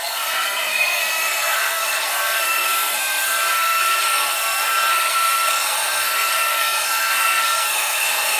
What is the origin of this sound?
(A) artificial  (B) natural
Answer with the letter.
A